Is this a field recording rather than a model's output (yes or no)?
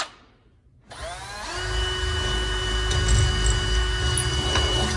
yes